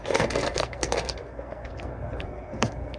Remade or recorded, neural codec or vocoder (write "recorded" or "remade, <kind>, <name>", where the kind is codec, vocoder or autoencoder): remade, codec, SNAC